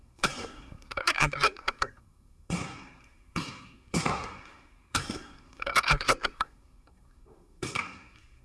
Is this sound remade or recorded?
remade